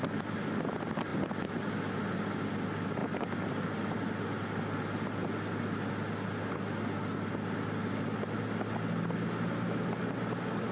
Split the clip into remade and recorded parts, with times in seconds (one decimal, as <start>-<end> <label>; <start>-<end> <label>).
0.0-10.7 recorded